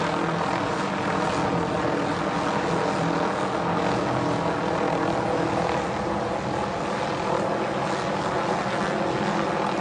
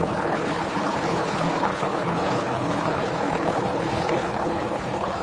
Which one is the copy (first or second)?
second